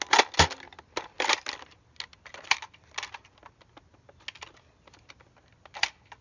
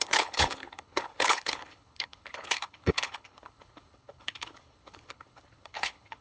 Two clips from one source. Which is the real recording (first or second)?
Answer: first